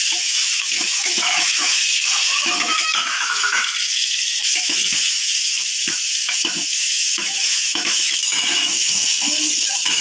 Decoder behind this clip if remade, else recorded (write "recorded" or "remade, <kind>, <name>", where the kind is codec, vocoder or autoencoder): remade, autoencoder, DAC-VAE